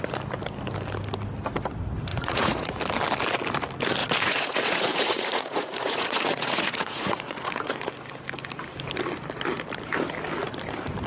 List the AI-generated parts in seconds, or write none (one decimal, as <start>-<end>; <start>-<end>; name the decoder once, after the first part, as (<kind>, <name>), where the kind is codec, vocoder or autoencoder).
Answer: 2.1-2.8 (vocoder, Vocos); 4.0-7.9

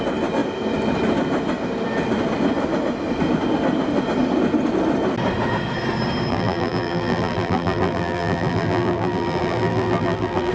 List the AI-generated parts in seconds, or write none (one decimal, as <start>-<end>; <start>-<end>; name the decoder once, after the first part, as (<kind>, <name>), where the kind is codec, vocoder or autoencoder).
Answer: 6.3-10.5 (vocoder, BigVGAN v2)

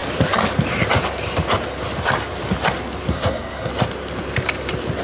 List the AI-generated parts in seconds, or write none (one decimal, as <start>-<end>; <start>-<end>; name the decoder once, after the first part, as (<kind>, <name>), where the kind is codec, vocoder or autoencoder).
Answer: 3.1-3.7 (codec, SNAC)